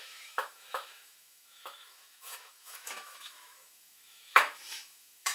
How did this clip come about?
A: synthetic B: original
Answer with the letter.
A